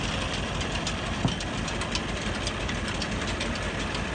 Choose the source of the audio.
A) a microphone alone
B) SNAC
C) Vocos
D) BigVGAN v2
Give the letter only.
A